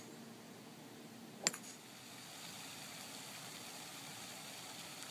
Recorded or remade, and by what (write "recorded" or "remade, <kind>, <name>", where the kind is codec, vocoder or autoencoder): recorded